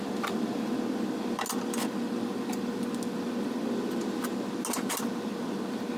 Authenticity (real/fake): real